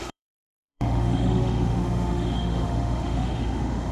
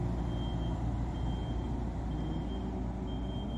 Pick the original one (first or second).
second